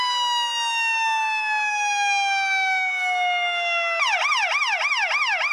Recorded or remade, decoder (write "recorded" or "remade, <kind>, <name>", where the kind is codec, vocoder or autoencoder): recorded